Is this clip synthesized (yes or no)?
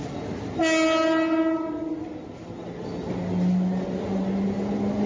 no